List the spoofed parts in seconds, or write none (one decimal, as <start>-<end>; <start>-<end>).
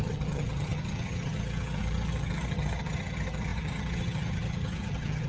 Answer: 0.0-5.3